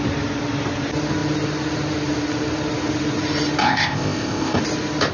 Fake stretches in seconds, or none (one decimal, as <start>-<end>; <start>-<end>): 3.6-4.6